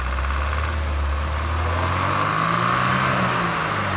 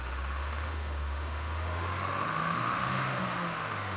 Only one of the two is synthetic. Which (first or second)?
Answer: second